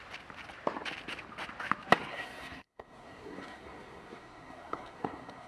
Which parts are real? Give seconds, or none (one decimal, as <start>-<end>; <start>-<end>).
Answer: 0.0-2.1